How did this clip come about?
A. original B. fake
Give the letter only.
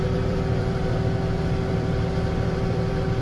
B